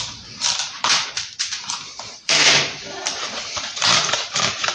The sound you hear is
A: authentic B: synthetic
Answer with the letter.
B